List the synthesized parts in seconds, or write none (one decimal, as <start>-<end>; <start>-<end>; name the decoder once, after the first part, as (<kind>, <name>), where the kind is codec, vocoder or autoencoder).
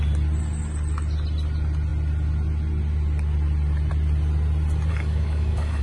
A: 4.9-5.8 (codec, DAC)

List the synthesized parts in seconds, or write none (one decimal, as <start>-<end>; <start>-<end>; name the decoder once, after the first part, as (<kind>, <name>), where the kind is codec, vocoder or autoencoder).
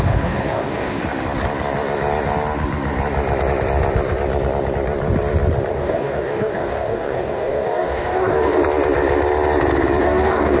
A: 0.0-1.0 (codec, DAC); 5.7-8.6; 10.0-10.6